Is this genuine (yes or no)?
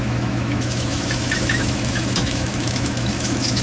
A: no